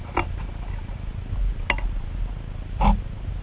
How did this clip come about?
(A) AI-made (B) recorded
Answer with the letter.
B